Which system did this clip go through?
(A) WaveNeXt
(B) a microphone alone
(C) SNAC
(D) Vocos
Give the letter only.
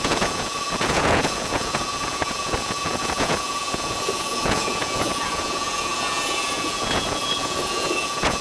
D